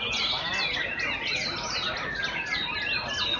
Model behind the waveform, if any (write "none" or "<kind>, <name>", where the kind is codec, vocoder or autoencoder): none